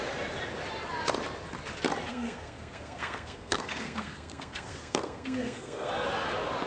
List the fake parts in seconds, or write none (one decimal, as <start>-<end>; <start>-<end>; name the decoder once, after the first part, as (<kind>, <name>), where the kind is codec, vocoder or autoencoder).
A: 2.1-5.9 (codec, SNAC)